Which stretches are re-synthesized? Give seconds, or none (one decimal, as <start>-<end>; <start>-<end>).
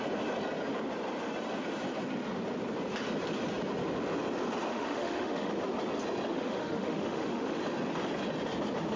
4.7-5.5; 6.3-7.6